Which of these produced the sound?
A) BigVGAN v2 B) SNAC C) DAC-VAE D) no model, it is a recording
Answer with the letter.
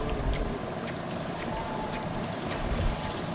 A